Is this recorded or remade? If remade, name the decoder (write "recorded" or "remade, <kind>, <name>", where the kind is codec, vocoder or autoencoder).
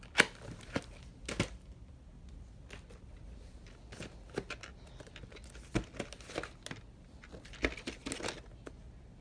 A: recorded